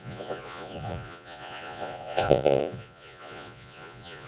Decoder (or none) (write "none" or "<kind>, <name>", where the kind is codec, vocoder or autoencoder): vocoder, Vocos